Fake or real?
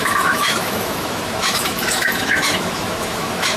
fake